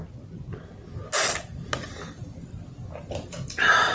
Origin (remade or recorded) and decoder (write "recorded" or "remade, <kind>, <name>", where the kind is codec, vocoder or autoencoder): recorded